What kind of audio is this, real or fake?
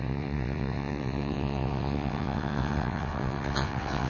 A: fake